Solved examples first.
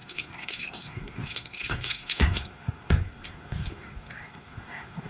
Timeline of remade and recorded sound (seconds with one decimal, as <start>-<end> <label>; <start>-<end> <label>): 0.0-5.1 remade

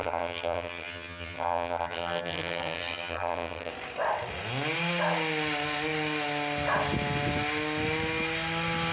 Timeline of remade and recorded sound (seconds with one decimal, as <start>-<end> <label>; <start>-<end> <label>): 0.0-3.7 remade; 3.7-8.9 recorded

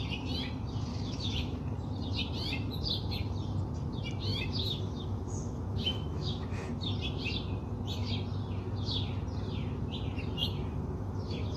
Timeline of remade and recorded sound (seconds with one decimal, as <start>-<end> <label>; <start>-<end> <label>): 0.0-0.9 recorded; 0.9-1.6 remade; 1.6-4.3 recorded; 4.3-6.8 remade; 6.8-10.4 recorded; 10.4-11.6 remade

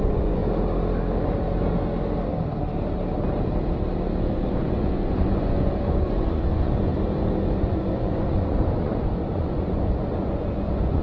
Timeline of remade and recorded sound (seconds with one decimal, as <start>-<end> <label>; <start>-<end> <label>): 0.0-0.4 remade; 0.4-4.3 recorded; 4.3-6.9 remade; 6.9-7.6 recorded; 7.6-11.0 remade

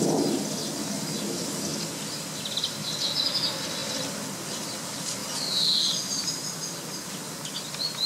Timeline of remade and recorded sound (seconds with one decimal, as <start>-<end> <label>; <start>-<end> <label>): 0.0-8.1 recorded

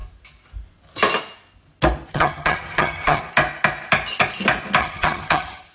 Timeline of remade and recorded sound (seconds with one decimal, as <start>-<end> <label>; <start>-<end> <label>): 0.0-2.1 recorded; 2.1-3.2 remade; 3.2-4.8 recorded; 4.8-5.7 remade

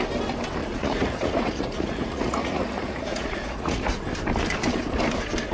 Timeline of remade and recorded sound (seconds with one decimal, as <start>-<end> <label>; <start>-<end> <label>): 0.0-0.6 recorded; 0.6-3.9 remade; 3.9-5.5 recorded

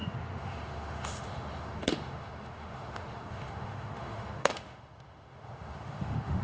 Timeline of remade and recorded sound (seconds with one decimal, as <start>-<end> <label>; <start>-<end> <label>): 0.0-6.4 remade